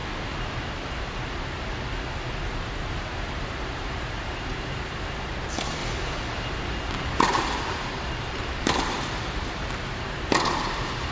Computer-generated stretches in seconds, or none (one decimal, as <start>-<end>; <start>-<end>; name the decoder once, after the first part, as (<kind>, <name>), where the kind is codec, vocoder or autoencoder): 2.4-5.8 (vocoder, BigVGAN v2); 7.2-11.1